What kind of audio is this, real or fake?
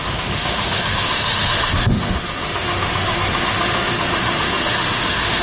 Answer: fake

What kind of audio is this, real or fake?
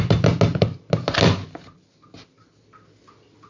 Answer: real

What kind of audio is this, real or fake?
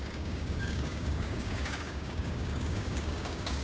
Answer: fake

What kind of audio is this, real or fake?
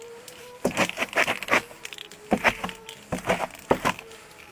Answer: real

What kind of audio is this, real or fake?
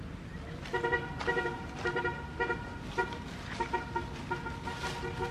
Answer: real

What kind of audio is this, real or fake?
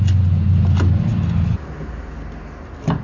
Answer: real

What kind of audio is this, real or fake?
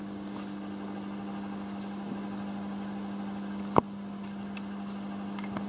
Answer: real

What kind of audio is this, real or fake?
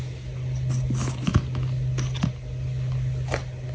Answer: real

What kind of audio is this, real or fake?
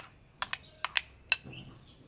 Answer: real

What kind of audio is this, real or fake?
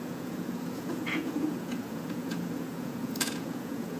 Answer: fake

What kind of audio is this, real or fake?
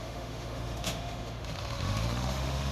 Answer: fake